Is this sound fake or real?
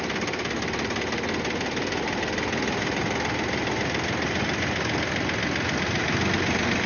real